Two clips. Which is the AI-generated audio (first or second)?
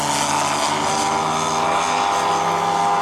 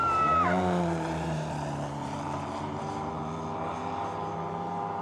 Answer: second